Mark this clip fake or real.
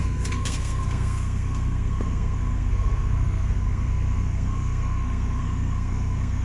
fake